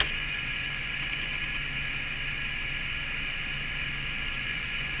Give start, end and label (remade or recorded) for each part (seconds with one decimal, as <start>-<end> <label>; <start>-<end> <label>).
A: 0.0-1.3 remade; 1.3-4.3 recorded; 4.3-5.0 remade